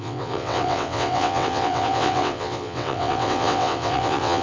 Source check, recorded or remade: remade